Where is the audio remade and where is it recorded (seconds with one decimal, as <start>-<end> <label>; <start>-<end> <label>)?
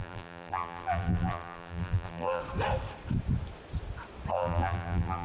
0.0-2.4 remade; 2.4-4.3 recorded; 4.3-5.2 remade